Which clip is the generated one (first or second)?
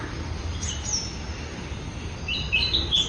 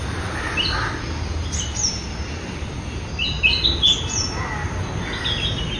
first